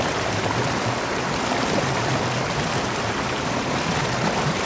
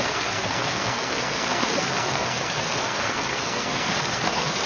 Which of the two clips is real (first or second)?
first